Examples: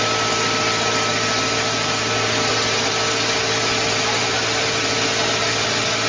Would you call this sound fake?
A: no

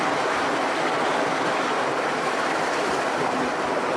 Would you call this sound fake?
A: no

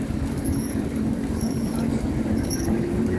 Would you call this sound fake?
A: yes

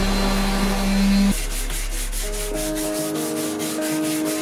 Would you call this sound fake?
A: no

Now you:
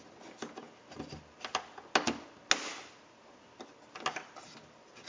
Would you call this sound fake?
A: no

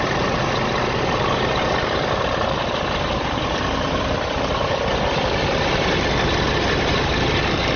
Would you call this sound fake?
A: no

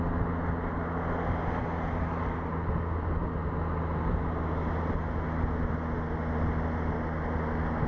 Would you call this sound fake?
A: no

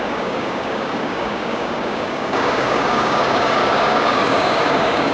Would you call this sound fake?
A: yes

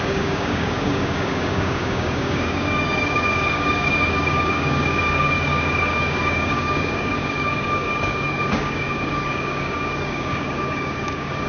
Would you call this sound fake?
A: yes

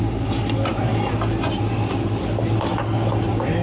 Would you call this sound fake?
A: no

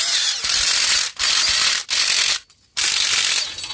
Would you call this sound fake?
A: no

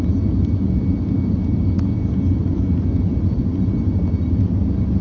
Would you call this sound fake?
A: no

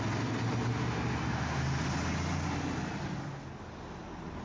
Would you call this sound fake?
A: no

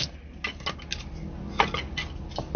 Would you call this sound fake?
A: no